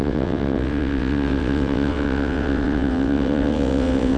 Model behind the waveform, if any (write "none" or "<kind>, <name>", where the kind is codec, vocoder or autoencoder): vocoder, WaveNeXt